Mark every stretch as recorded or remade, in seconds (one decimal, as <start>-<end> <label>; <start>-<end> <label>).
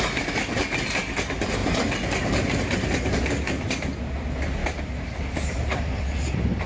0.0-1.6 recorded; 1.6-3.2 remade; 3.2-4.6 recorded; 4.6-5.8 remade; 5.8-6.7 recorded